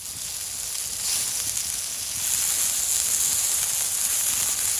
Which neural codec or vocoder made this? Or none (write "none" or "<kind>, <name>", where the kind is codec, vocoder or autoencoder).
none